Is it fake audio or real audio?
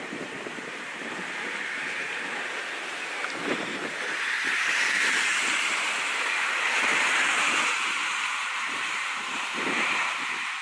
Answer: fake